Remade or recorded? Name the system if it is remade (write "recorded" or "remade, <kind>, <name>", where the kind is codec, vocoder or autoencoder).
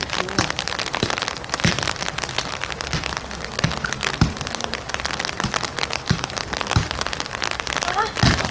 recorded